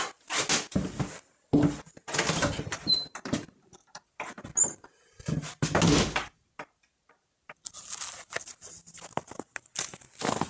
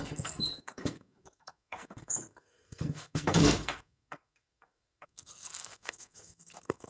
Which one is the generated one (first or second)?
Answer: second